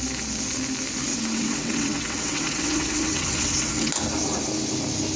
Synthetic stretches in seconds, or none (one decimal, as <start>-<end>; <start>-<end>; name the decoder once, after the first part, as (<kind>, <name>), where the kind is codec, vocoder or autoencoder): 1.1-3.9 (vocoder, WaveNeXt)

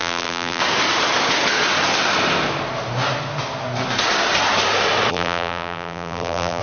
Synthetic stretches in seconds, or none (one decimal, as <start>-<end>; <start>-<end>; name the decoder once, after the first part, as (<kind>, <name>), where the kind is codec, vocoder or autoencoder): 0.0-0.6 (vocoder, BigVGAN v2); 5.1-6.6

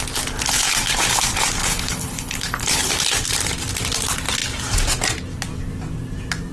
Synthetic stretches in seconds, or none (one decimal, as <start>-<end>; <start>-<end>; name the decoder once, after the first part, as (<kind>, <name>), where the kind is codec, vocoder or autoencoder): 1.6-2.9 (codec, HILCodec)

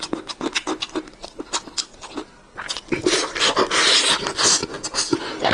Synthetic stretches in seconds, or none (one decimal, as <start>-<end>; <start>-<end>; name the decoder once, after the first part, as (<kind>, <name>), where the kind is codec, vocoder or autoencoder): none